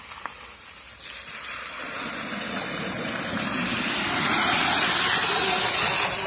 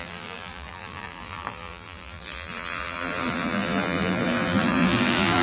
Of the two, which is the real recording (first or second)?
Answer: first